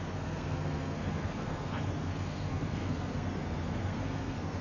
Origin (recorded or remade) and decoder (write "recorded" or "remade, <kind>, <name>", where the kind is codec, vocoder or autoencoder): remade, codec, SNAC